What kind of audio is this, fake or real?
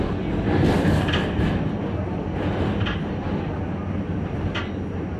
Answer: real